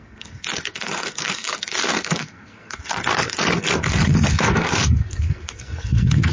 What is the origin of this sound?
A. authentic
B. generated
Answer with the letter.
B